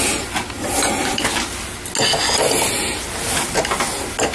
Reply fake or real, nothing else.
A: real